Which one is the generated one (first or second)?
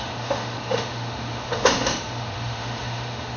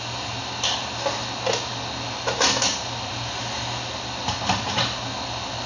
first